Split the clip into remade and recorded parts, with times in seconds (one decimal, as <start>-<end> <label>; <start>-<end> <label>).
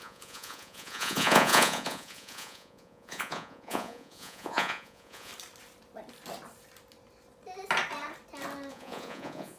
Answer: 0.0-5.3 remade; 5.3-8.7 recorded; 8.7-9.6 remade